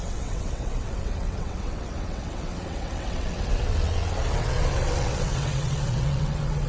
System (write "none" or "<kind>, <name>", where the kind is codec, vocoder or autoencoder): vocoder, WaveNeXt